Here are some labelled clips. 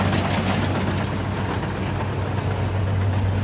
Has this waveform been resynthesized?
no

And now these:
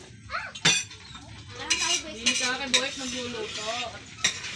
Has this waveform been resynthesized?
no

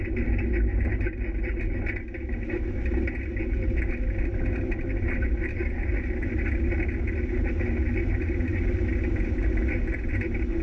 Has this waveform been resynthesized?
no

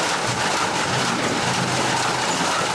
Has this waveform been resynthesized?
no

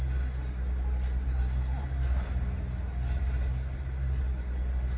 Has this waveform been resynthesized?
no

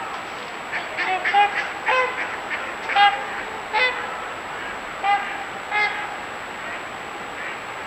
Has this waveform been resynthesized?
no